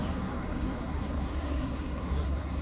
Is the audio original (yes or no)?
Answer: no